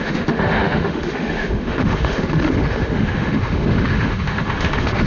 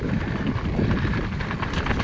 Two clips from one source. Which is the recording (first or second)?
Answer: second